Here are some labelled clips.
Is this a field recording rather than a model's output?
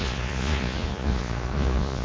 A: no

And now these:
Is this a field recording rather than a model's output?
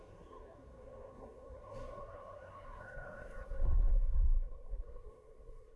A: no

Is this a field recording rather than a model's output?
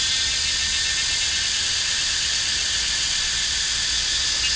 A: yes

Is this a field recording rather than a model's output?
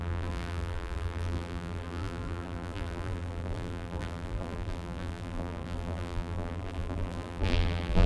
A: no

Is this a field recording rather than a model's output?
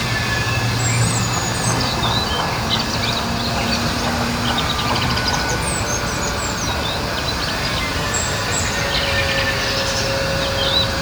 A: yes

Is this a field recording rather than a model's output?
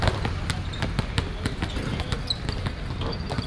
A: yes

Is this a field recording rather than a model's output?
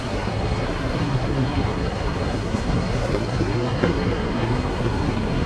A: no